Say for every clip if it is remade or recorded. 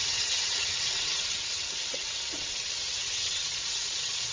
remade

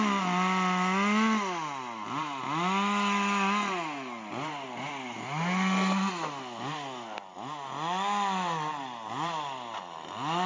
recorded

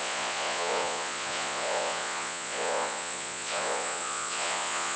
remade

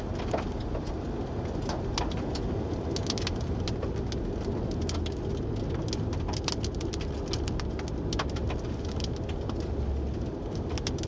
recorded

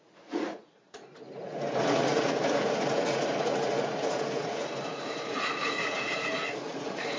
remade